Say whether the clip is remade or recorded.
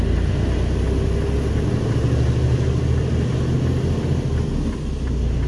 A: recorded